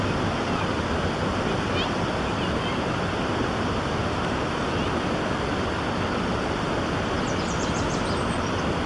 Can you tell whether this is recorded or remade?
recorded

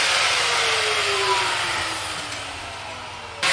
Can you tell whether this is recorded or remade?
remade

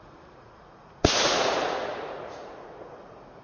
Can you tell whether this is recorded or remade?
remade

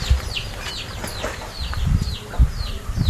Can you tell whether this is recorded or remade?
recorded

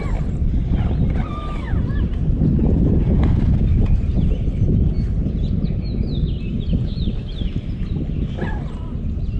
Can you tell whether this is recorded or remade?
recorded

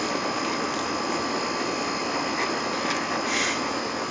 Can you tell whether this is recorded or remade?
recorded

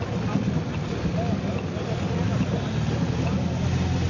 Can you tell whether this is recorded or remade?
recorded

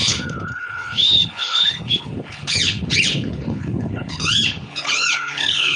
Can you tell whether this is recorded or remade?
remade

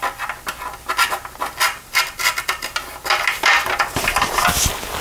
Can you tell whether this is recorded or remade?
recorded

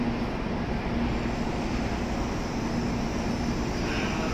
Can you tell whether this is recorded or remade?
recorded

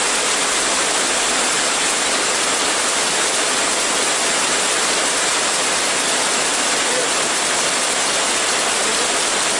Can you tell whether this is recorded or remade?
recorded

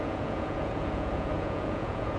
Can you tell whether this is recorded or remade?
remade